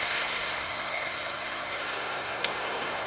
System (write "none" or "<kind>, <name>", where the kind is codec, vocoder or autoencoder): codec, SNAC